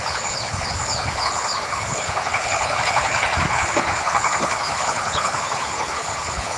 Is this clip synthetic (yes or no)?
yes